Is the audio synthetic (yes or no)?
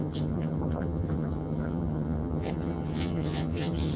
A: yes